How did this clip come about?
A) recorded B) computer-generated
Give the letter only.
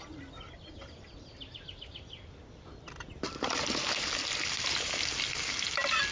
A